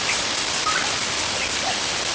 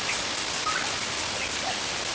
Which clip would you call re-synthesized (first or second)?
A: first